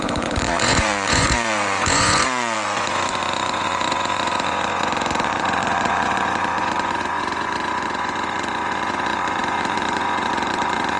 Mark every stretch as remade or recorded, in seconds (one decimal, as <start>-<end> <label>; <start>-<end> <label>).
0.0-11.0 remade